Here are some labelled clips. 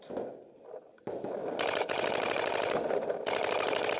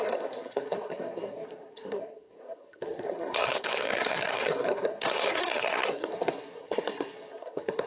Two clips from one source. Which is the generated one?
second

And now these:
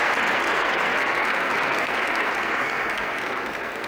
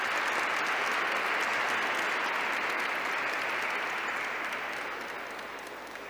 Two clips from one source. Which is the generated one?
first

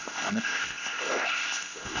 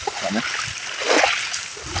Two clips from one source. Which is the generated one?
first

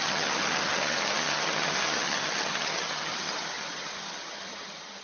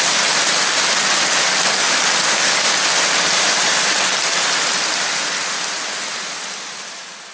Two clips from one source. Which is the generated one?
first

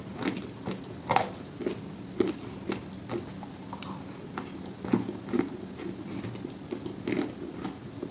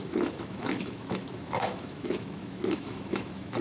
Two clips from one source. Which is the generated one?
second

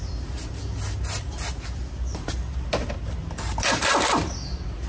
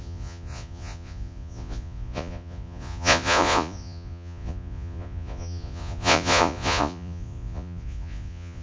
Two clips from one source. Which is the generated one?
second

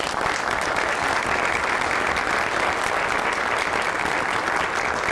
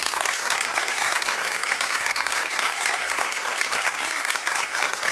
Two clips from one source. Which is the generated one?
second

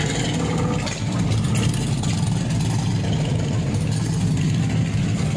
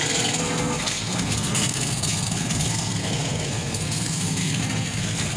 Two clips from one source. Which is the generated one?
second